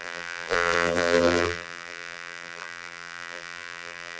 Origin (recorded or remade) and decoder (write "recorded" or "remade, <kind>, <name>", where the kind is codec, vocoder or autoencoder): remade, vocoder, BigVGAN v2